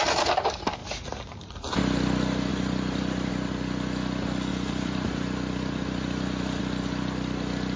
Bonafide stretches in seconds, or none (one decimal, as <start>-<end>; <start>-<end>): 0.0-0.8; 1.8-2.5; 3.3-4.5; 6.6-7.8